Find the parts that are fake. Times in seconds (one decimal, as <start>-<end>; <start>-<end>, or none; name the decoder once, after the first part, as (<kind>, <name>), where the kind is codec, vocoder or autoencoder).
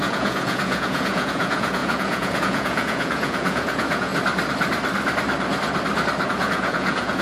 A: 0.0-4.1 (vocoder, Vocos); 6.3-7.2